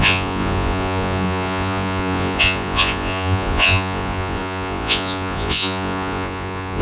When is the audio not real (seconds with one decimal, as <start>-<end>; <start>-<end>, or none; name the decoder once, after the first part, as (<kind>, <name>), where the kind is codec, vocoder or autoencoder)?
0.0-6.8 (vocoder, Vocos)